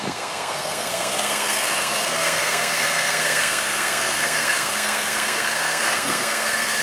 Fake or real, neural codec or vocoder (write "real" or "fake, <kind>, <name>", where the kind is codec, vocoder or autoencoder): fake, codec, SNAC